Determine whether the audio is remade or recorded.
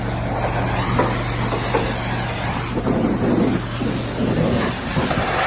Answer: recorded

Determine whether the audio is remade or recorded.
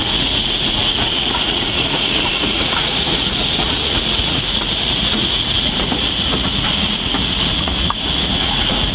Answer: remade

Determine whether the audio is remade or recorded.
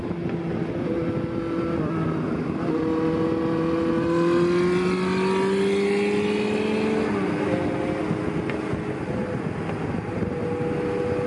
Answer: recorded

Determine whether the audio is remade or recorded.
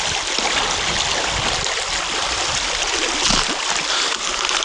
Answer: recorded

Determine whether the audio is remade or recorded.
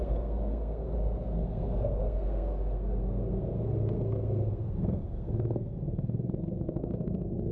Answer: remade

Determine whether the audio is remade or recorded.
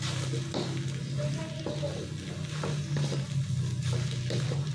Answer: recorded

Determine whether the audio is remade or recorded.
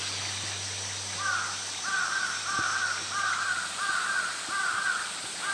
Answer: recorded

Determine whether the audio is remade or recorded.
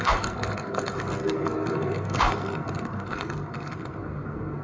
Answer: remade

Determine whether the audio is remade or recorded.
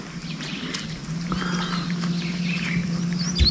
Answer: recorded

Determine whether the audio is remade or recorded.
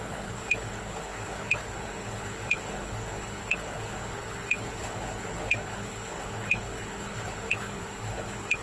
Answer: remade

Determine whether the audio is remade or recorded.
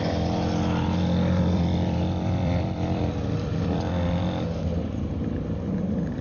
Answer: remade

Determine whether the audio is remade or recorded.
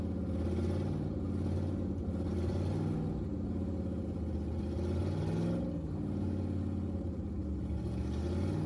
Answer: recorded